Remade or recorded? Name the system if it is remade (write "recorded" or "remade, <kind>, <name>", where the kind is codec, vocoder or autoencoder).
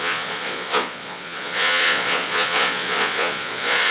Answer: remade, vocoder, Vocos